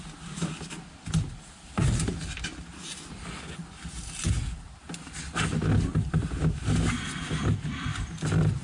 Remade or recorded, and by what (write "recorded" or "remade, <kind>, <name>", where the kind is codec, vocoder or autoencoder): recorded